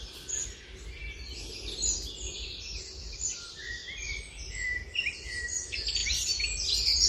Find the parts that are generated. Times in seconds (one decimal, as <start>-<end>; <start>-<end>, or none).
3.8-4.4; 6.0-7.1